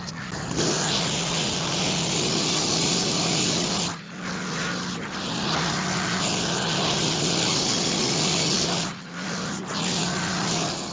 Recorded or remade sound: recorded